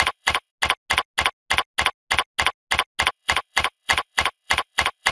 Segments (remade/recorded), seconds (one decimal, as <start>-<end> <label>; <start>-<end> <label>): 0.0-0.5 remade; 0.5-3.1 recorded; 3.1-5.1 remade